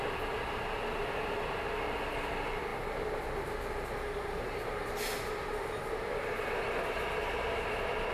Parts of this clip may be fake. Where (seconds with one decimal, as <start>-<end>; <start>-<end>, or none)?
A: none